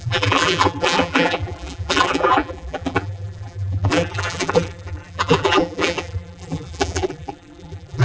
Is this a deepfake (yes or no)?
yes